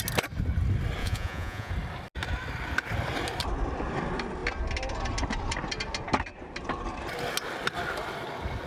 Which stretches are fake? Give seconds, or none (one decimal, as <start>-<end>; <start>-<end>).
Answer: 1.0-1.7